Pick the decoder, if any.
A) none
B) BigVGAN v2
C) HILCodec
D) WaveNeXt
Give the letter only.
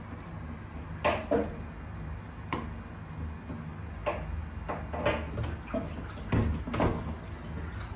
A